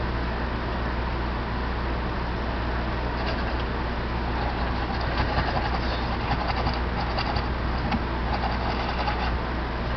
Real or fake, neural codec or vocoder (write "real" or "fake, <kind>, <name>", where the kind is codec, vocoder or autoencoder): real